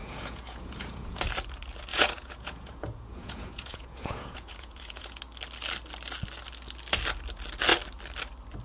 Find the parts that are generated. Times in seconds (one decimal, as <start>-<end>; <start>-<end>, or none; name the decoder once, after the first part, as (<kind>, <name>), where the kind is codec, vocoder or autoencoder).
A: 0.0-1.2 (vocoder, Vocos); 1.9-5.2